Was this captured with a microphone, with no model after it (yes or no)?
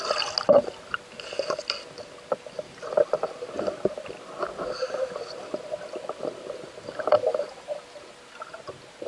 yes